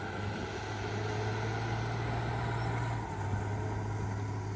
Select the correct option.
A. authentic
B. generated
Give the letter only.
A